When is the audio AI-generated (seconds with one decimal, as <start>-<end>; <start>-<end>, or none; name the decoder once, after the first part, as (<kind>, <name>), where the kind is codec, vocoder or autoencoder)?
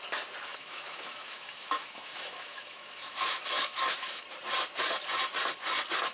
0.5-4.2 (autoencoder, DAC-VAE)